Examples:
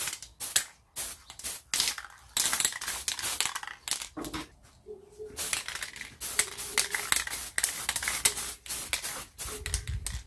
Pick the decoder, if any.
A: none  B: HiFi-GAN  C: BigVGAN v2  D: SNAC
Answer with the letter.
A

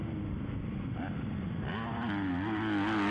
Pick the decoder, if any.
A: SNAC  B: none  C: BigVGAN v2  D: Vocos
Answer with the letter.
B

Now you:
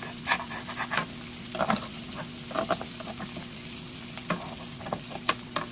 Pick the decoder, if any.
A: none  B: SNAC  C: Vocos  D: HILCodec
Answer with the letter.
A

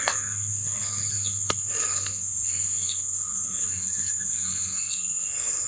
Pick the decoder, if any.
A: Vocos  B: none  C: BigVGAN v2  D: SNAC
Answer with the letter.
D